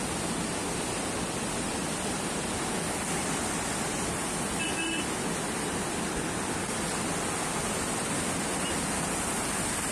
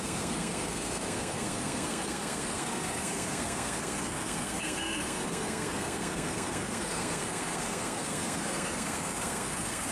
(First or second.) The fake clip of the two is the second